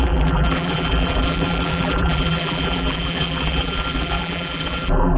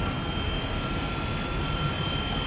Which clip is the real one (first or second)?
second